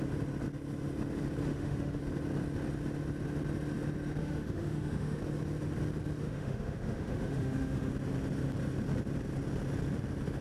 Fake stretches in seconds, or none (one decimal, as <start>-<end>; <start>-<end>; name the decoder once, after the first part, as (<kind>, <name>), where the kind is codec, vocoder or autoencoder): 1.5-2.0 (autoencoder, DAC-VAE); 4.2-5.2; 6.2-7.9